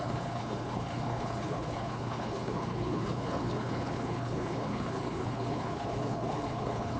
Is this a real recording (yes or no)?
no